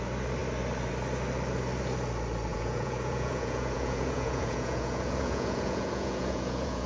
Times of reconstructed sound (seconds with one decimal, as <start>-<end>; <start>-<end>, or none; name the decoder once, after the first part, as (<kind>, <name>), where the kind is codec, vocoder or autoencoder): 2.5-6.9 (vocoder, Vocos)